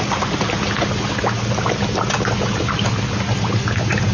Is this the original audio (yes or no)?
yes